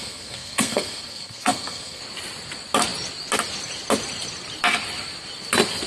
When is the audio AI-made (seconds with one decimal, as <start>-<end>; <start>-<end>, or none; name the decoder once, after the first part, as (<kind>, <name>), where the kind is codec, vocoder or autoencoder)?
0.0-2.0 (codec, SNAC)